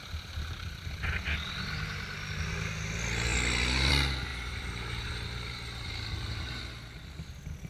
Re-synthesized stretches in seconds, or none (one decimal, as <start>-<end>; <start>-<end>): 4.3-6.6